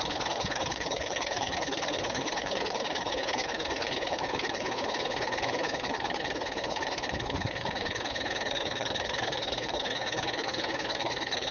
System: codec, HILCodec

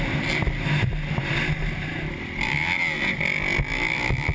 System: none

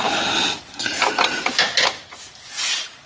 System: none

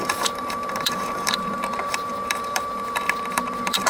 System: vocoder, BigVGAN v2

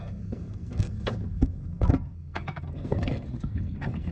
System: codec, SNAC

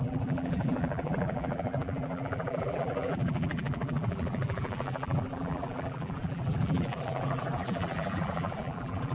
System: vocoder, BigVGAN v2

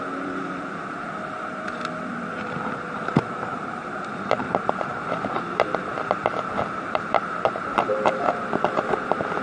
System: vocoder, BigVGAN v2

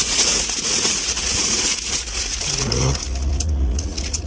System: vocoder, Vocos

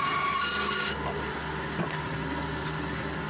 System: none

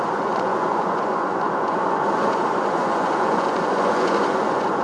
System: vocoder, Vocos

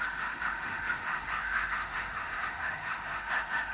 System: autoencoder, DAC-VAE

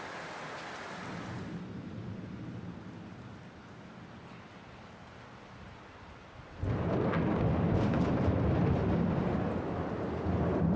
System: none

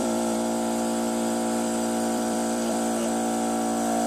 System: vocoder, BigVGAN v2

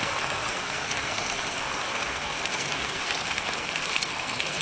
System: codec, SNAC